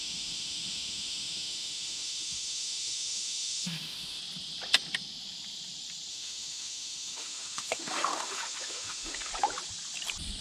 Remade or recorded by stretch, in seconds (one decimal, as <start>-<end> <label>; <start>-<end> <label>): 0.0-4.2 remade; 4.2-6.1 recorded; 6.1-9.3 remade; 9.3-10.4 recorded